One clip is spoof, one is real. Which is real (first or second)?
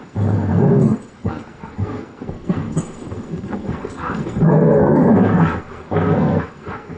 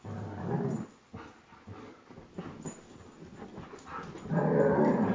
second